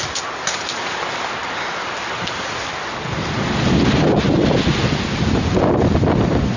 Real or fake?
real